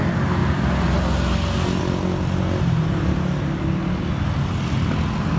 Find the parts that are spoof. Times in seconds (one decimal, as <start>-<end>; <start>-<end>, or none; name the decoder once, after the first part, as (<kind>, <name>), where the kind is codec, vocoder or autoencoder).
none